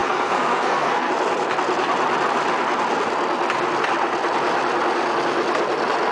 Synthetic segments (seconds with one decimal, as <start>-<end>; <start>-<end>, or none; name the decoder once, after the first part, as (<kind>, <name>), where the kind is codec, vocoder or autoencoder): 0.0-1.1 (codec, SNAC)